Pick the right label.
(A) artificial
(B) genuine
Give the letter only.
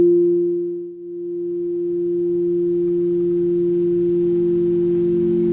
B